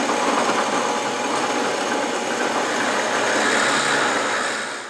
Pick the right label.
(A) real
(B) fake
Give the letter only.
A